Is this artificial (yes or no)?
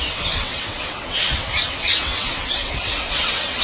yes